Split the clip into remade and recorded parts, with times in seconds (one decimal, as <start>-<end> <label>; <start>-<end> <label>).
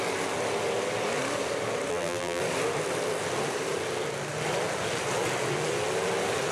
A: 0.0-1.9 recorded; 1.9-2.4 remade; 2.4-6.5 recorded